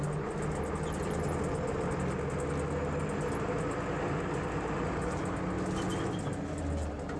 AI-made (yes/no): no